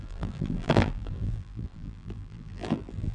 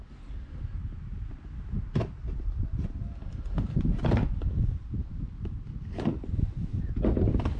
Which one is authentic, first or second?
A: second